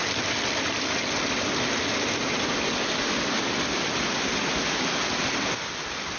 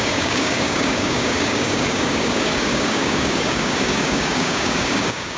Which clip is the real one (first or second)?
first